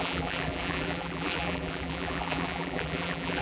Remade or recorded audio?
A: remade